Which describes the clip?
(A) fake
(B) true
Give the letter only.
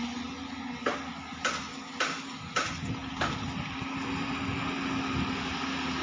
B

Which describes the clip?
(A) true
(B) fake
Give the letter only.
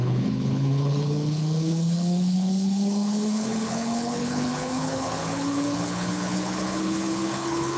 B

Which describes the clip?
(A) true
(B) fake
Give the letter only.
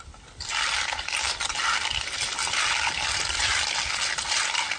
A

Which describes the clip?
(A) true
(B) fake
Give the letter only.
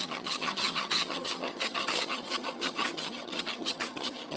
B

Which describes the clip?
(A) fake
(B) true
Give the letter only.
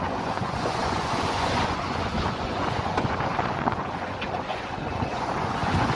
A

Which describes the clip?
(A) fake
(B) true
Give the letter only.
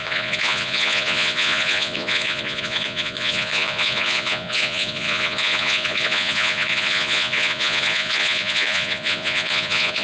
A